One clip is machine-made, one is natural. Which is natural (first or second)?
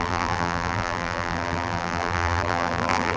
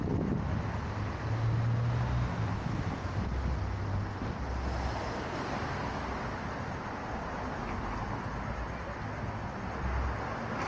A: second